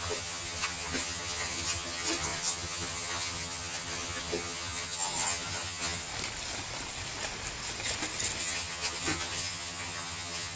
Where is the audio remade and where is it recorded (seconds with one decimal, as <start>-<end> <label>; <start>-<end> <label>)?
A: 0.0-6.1 remade; 6.1-8.4 recorded; 8.4-10.6 remade